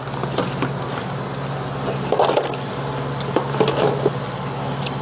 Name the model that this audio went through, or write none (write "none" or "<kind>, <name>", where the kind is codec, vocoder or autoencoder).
none